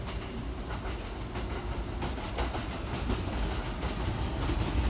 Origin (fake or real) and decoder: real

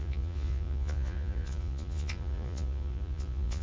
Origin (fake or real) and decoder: fake, vocoder, Vocos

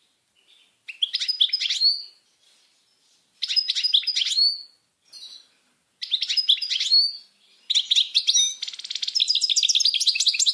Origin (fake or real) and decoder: real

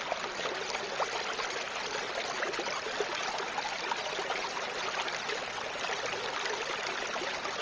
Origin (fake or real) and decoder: real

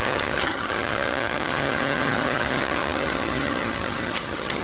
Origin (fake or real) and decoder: fake, vocoder, HiFi-GAN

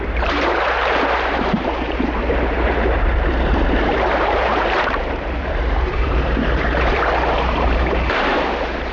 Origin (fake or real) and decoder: fake, vocoder, BigVGAN v2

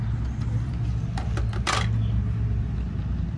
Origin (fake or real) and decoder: real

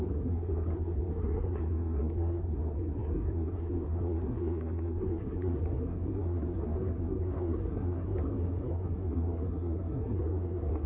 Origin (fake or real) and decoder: fake, codec, SNAC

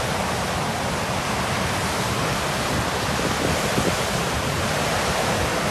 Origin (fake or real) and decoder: real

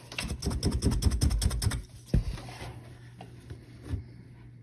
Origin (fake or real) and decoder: real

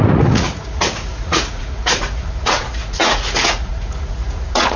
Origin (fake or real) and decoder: fake, vocoder, Vocos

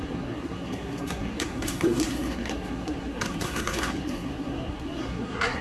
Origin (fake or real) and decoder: fake, codec, SNAC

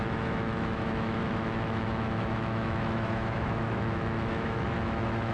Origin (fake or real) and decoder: fake, autoencoder, DAC-VAE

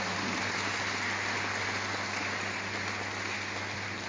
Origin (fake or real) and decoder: real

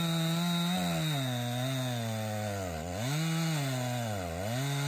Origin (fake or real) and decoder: real